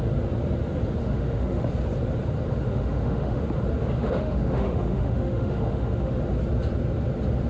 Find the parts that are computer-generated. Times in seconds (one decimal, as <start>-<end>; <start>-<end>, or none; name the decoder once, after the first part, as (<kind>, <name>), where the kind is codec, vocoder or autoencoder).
1.0-1.7 (autoencoder, DAC-VAE); 2.7-3.4; 4.0-6.1